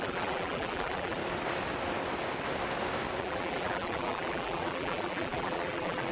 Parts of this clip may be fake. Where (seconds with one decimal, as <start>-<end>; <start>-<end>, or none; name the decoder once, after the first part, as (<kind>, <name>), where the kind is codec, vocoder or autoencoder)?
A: 0.0-1.2 (vocoder, BigVGAN v2); 3.2-6.1